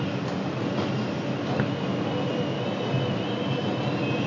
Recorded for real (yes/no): yes